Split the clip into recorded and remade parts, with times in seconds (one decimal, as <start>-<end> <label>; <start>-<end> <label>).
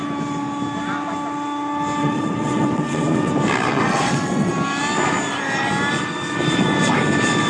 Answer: 0.0-2.0 recorded; 2.0-3.3 remade; 3.3-3.7 recorded; 3.7-4.5 remade; 4.5-7.5 recorded